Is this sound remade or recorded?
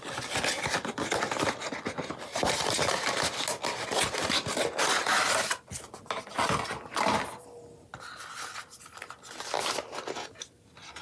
recorded